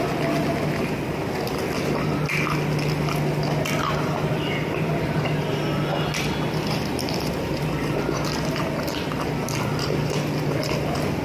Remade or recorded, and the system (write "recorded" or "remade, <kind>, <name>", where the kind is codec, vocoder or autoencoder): recorded